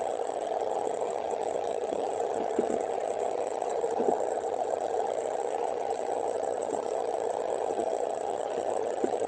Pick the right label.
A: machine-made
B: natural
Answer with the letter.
A